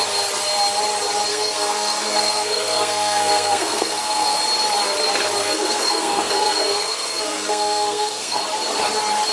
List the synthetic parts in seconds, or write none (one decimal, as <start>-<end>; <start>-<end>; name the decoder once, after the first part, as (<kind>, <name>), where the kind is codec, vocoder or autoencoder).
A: 1.3-4.4 (codec, SNAC); 5.4-8.4